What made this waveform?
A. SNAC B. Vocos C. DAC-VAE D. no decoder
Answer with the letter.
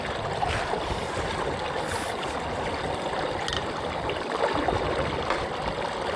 D